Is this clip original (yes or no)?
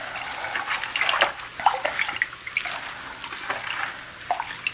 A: yes